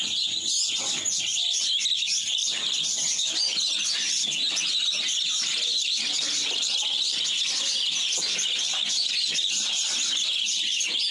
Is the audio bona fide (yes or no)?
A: yes